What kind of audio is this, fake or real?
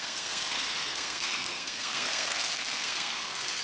fake